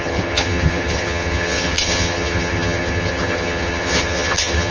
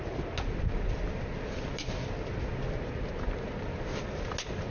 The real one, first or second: second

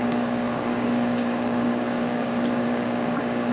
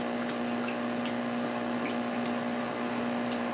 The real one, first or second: second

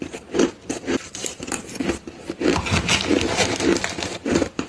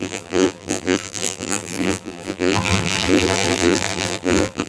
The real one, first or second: first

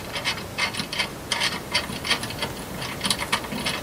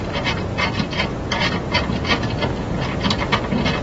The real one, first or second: second